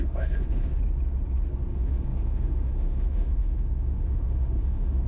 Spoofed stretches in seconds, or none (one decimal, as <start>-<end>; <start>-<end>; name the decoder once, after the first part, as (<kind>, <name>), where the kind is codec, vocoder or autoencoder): 0.0-0.7 (autoencoder, DAC-VAE); 1.7-5.1